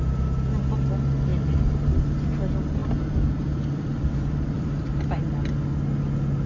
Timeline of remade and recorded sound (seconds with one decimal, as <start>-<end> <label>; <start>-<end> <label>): 0.0-1.3 recorded; 1.3-2.0 remade; 2.0-2.8 recorded; 2.8-4.9 remade; 4.9-6.5 recorded